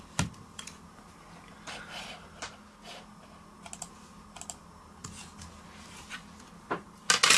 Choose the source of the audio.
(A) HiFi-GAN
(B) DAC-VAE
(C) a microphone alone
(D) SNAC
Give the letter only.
C